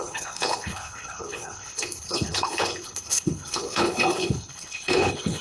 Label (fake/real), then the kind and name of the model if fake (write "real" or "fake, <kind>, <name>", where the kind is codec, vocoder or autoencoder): fake, codec, HILCodec